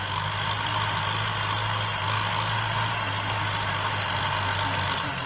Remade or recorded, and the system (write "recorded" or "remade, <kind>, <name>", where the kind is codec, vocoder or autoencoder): recorded